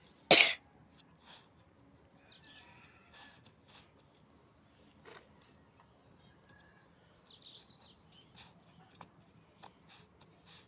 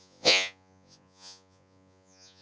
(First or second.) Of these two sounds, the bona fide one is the first